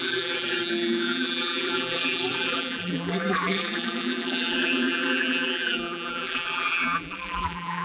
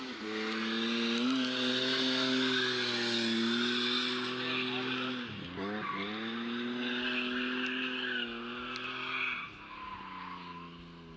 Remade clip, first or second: first